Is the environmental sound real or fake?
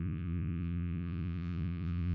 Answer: fake